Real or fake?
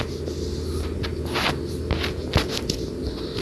real